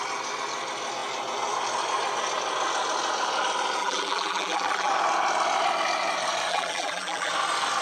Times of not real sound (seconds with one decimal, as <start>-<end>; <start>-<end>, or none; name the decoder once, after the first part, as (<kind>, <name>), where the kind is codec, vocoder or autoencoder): 3.8-4.9 (vocoder, BigVGAN v2); 6.5-7.3